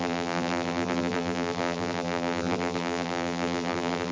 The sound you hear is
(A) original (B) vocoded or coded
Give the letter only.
B